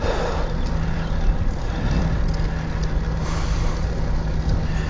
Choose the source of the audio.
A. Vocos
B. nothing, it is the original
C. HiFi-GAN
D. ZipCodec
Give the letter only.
B